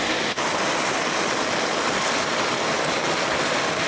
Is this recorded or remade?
recorded